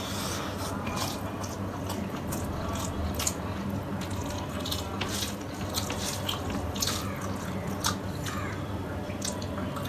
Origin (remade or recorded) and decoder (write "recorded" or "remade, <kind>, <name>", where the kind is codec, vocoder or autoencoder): recorded